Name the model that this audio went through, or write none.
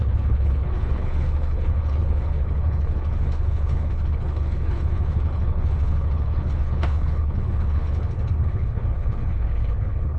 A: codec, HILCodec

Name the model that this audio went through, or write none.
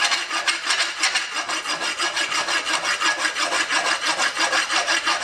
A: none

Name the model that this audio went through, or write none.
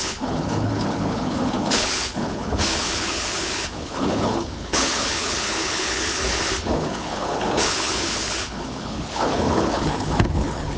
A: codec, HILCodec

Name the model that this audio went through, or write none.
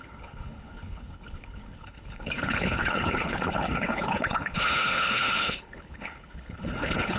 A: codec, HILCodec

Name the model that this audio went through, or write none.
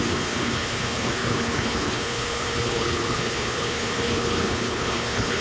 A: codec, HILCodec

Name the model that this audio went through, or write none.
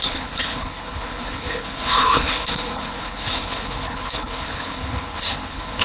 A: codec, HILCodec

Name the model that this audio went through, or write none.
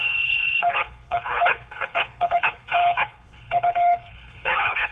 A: codec, HILCodec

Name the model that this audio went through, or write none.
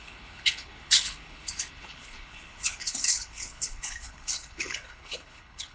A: codec, HILCodec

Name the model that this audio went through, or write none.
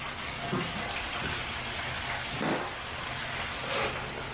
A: none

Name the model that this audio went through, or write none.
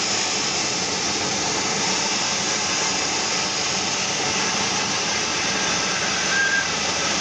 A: none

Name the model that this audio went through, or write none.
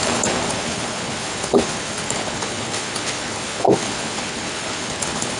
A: codec, HILCodec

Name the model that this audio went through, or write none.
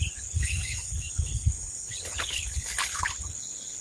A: codec, HILCodec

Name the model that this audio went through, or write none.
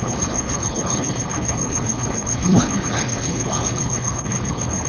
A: codec, HILCodec